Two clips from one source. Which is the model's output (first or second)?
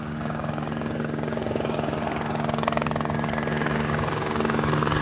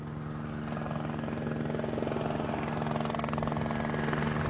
first